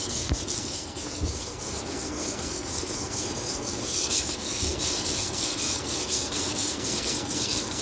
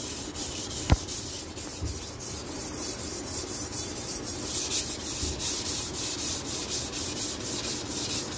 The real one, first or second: second